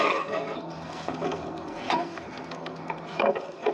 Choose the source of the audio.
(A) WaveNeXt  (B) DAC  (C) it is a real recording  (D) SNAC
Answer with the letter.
D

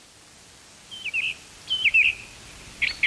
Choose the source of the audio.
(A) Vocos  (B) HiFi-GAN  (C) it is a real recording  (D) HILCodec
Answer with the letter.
C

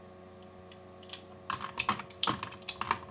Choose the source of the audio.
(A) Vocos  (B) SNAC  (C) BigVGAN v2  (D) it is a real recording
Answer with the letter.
D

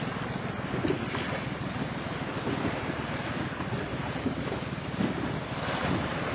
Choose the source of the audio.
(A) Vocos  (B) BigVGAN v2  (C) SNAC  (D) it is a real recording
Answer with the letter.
D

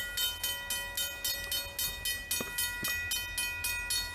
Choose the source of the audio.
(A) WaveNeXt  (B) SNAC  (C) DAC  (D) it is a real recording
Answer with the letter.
D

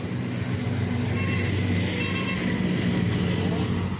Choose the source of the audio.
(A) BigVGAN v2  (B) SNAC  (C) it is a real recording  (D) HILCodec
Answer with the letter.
C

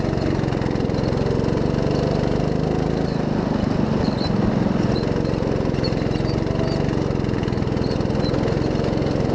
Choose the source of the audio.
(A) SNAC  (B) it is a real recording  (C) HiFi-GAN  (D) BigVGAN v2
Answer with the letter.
B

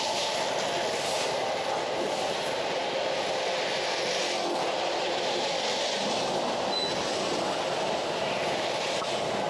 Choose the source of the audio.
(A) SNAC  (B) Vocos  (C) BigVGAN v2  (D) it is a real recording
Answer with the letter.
D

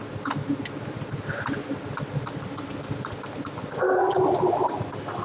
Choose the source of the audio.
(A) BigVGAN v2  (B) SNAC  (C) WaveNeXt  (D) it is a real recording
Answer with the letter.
D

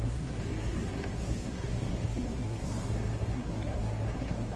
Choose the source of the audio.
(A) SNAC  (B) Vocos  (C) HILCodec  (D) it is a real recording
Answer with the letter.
A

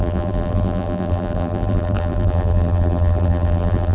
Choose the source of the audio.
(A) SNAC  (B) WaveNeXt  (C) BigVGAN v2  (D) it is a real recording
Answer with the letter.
C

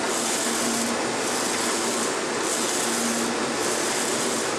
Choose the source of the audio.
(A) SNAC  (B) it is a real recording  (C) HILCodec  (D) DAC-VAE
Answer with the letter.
B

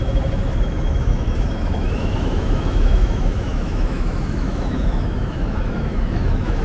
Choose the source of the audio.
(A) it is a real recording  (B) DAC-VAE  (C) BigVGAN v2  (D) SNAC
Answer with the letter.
B